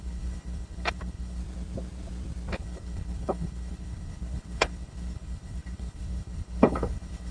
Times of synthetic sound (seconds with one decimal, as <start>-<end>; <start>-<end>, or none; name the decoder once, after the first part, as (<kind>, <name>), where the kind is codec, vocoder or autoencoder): 0.0-1.4 (codec, HILCodec); 2.6-7.3